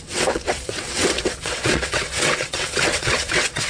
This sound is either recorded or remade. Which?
remade